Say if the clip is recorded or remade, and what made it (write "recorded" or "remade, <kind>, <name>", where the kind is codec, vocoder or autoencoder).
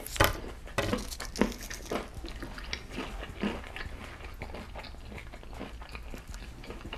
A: recorded